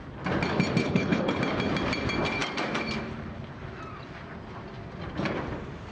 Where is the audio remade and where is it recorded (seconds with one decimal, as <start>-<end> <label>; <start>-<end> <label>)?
0.0-0.8 recorded; 0.8-1.4 remade; 1.4-5.9 recorded